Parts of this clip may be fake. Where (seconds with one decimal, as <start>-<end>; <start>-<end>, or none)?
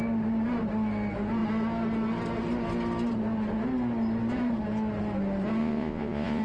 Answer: 5.6-6.4